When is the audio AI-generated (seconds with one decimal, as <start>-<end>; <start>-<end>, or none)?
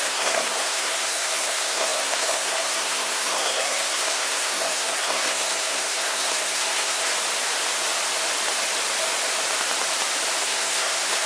0.0-7.1; 10.4-11.3